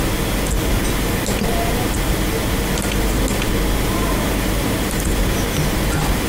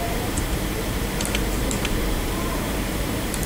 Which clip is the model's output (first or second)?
second